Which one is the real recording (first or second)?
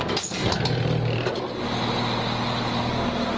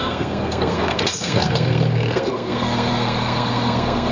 first